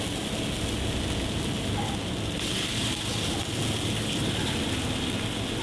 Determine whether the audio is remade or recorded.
recorded